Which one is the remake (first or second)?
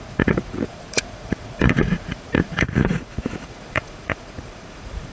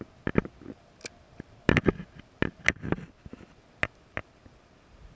first